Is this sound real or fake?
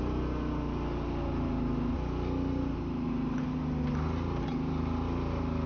real